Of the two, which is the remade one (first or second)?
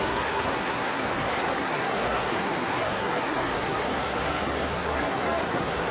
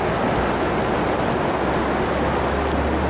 first